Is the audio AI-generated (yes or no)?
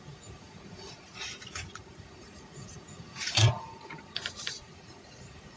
yes